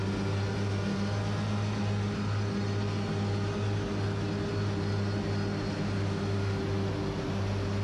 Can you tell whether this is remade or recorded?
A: recorded